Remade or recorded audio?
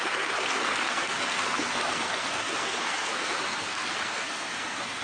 remade